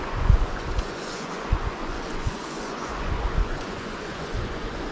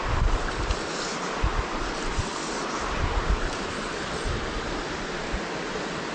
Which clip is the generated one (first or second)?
first